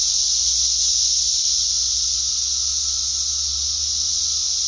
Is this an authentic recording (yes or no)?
yes